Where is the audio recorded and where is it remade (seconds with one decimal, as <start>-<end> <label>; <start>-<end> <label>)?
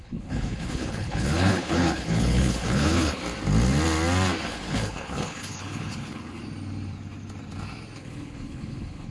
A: 0.0-3.2 remade; 3.2-4.5 recorded; 4.5-6.4 remade; 6.4-8.0 recorded; 8.0-9.1 remade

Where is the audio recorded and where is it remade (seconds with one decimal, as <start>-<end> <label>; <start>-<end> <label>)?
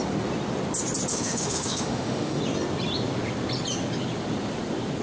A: 0.0-1.1 recorded; 1.1-2.4 remade; 2.4-5.0 recorded